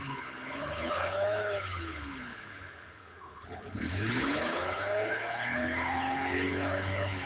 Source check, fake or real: fake